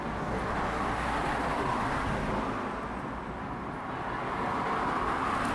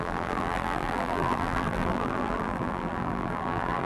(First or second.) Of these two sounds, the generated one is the second